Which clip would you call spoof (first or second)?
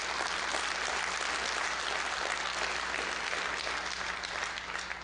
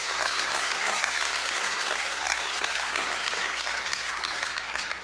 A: second